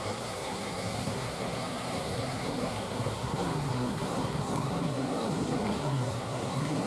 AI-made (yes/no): yes